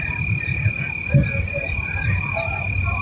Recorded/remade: recorded